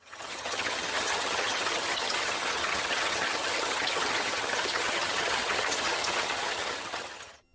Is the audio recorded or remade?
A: remade